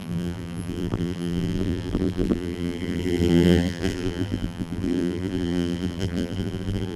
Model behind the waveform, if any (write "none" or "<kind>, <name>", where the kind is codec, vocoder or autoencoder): vocoder, BigVGAN v2